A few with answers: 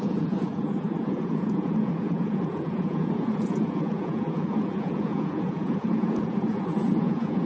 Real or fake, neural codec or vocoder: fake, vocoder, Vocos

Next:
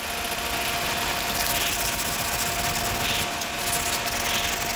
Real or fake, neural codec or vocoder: real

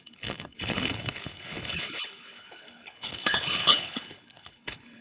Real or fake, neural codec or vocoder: fake, codec, HILCodec